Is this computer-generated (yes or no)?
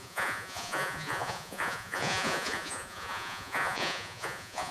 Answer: yes